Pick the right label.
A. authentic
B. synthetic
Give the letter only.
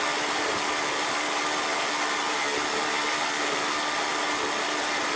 A